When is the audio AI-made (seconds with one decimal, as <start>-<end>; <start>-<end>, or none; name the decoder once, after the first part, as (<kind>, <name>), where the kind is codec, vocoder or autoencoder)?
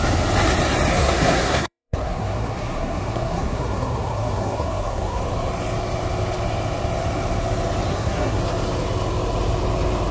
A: 0.9-5.2 (codec, SNAC); 7.9-8.4